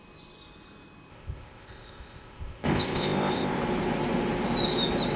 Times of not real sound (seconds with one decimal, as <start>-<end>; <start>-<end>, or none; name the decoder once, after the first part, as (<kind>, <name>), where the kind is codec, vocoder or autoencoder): 1.1-3.6 (codec, ZipCodec)